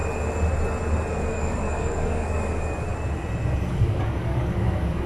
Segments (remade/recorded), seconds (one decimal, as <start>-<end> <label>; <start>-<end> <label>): 0.0-1.3 recorded; 1.3-2.9 remade; 2.9-3.7 recorded; 3.7-5.1 remade